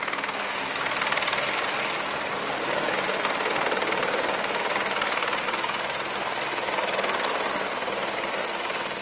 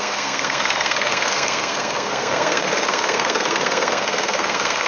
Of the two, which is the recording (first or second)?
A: first